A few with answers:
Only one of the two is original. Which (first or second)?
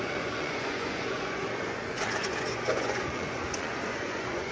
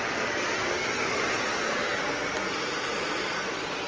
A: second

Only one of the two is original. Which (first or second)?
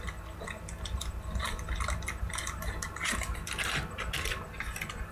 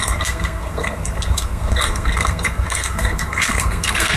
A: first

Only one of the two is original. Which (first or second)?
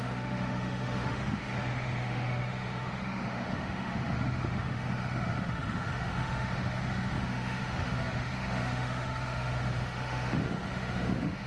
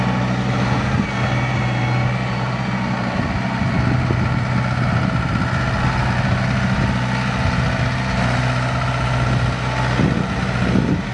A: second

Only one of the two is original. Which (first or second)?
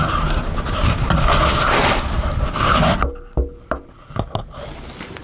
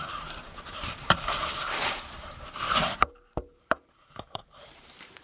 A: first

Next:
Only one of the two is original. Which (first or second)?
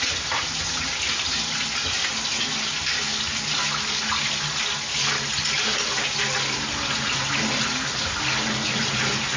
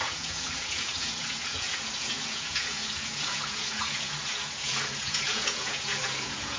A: first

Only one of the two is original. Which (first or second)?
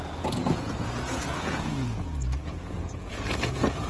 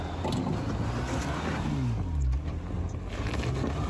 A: second